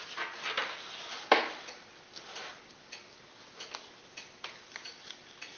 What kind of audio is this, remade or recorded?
recorded